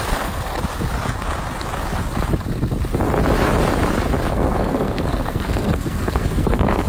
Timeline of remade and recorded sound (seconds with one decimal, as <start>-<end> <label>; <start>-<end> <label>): 0.0-0.5 remade; 0.5-4.3 recorded; 4.3-6.9 remade